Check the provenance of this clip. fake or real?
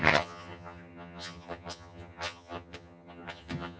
fake